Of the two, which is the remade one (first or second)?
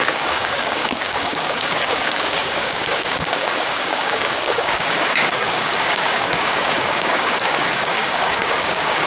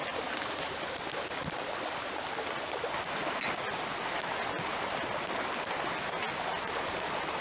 first